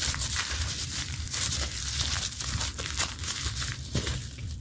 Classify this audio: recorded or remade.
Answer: remade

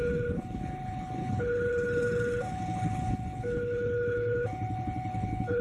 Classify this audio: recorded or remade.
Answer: remade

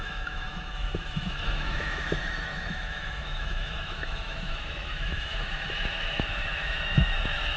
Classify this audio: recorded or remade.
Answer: remade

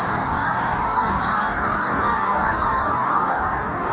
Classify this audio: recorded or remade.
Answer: remade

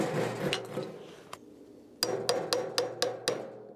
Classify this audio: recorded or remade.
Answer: recorded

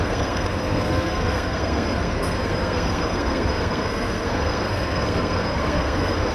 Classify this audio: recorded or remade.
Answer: remade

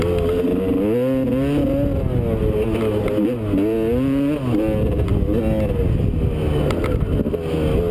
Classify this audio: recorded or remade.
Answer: recorded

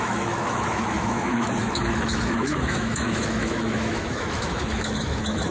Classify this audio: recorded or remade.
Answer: remade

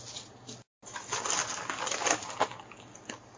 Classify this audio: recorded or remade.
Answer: recorded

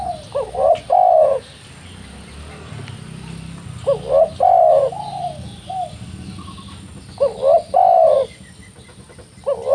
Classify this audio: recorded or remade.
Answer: recorded